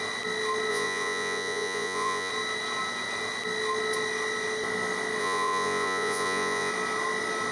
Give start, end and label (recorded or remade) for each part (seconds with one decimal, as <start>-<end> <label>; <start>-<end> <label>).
0.0-0.7 recorded; 0.7-2.3 remade; 2.3-5.2 recorded; 5.2-6.7 remade; 6.7-7.5 recorded